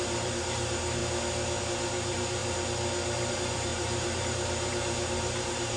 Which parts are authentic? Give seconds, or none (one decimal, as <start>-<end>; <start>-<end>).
1.0-1.6; 2.4-3.3